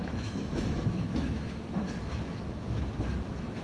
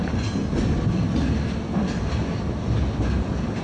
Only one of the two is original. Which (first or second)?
second